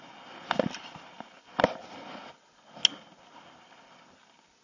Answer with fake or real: real